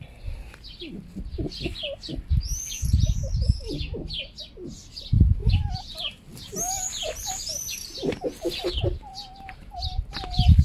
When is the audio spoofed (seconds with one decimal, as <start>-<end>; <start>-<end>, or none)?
none